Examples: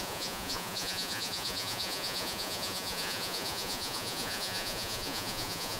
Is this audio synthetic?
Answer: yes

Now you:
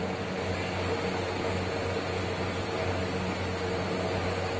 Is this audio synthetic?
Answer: no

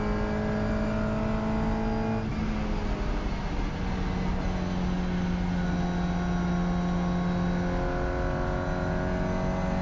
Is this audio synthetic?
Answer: no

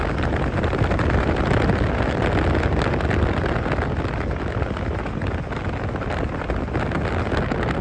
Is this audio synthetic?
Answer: no